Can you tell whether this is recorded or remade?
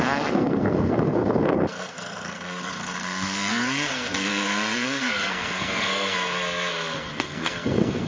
remade